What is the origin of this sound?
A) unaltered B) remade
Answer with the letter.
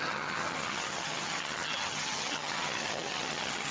B